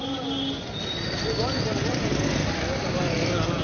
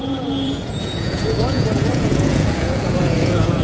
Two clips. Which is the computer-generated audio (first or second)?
second